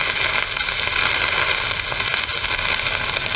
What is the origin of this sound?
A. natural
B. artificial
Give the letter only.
A